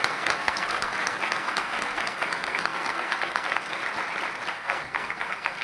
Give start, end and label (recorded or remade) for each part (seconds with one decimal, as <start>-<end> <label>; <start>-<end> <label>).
0.0-3.8 remade; 3.8-4.5 recorded; 4.5-5.6 remade